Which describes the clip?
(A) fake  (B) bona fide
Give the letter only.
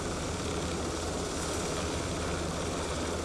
B